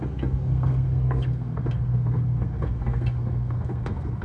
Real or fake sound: fake